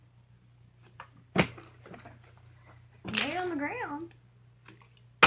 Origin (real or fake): real